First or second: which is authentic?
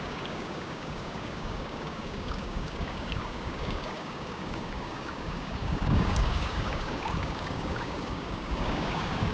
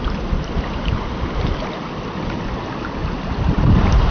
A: second